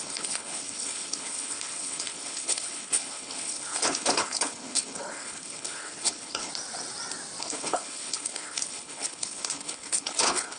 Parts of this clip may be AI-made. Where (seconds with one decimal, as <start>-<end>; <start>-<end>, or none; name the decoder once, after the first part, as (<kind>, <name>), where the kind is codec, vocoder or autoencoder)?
0.0-6.5 (codec, HILCodec); 7.4-10.6